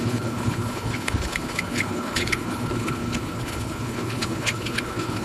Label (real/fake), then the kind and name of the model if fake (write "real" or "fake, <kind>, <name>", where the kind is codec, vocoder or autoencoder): fake, codec, HILCodec